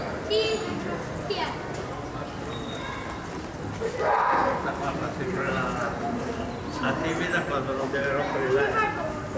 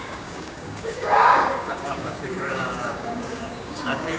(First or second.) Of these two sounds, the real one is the first